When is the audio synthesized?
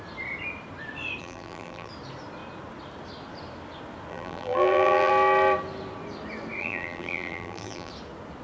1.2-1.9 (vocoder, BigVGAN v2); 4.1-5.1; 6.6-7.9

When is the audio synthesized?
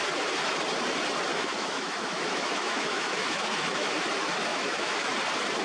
1.3-3.9 (autoencoder, DAC-VAE); 4.5-5.1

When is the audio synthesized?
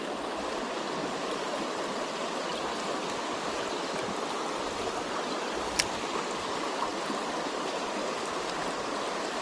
1.0-1.8 (vocoder, BigVGAN v2)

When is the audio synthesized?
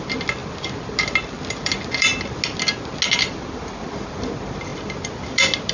none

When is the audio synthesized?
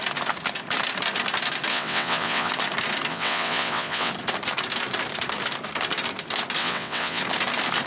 1.7-2.5 (vocoder, WaveNeXt); 3.1-4.1; 6.6-7.2